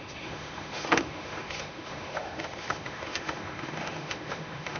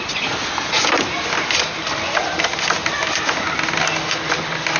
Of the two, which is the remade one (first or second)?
first